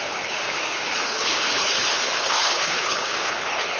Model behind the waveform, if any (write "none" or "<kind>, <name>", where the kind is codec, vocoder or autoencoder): codec, HILCodec